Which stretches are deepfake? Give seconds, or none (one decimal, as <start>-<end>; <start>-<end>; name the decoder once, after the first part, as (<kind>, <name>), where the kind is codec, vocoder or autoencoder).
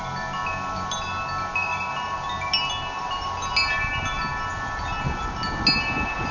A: none